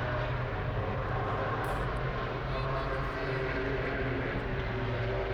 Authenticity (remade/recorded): recorded